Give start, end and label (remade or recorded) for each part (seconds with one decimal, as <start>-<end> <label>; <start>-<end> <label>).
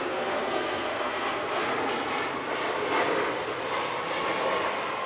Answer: 0.0-1.7 remade; 1.7-5.1 recorded